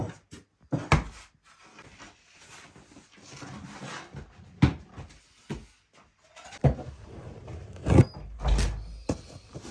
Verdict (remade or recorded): recorded